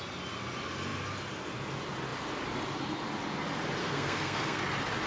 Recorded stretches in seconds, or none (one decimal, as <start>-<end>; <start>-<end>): 0.0-3.8; 4.6-5.1